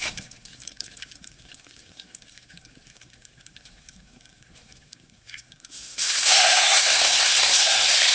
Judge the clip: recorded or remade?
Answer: remade